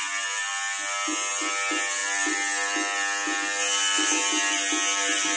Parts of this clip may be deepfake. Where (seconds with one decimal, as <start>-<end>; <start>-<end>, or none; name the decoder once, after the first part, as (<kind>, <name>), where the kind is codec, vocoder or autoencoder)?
none